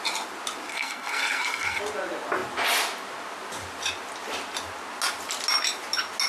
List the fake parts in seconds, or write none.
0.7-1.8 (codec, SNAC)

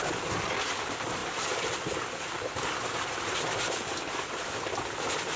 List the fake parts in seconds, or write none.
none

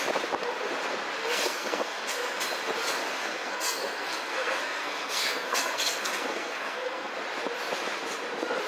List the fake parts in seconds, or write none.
1.2-2.4 (codec, SNAC); 3.0-7.1

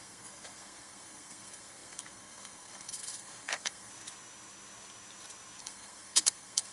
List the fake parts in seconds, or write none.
0.0-3.9 (codec, SNAC); 5.6-6.7

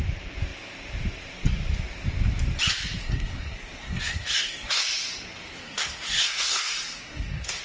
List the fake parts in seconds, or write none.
3.0-4.8 (codec, SNAC); 5.4-7.6

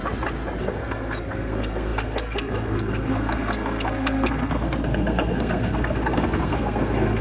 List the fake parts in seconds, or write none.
0.6-7.2 (codec, SNAC)

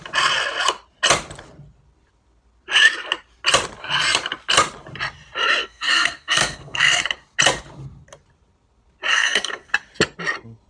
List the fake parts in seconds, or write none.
5.6-7.0 (codec, SNAC); 9.1-9.7